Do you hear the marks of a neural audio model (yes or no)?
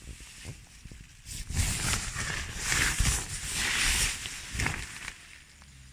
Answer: no